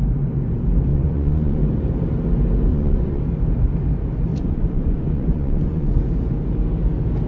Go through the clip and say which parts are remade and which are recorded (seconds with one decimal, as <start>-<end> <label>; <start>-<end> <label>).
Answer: 0.0-0.9 recorded; 0.9-1.6 remade; 1.6-2.7 recorded; 2.7-3.2 remade; 3.2-4.3 recorded; 4.3-6.0 remade; 6.0-7.3 recorded